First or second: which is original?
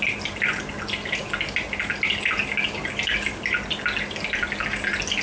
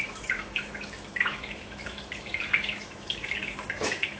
first